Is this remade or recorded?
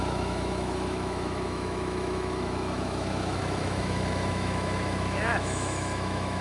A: remade